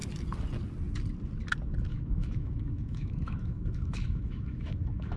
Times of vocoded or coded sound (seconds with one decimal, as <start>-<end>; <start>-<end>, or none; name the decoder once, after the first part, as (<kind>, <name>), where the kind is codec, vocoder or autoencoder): 1.9-5.2 (autoencoder, DAC-VAE)